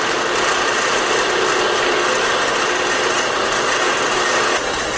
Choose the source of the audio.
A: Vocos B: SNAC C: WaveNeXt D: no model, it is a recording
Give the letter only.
D